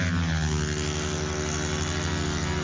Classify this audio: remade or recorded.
recorded